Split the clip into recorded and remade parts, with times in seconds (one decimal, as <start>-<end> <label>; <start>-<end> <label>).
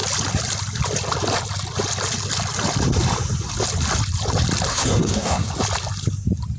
0.0-4.7 recorded; 4.7-5.5 remade; 5.5-6.6 recorded